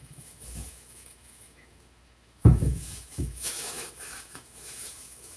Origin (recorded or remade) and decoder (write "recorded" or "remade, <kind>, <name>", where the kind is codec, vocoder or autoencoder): remade, autoencoder, DAC-VAE